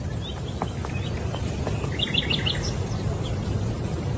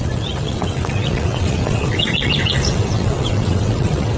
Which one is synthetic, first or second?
second